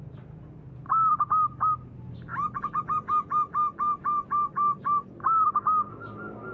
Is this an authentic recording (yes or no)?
yes